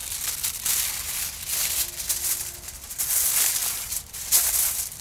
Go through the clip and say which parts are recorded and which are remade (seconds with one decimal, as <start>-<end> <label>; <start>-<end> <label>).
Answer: 0.0-3.6 recorded; 3.6-5.0 remade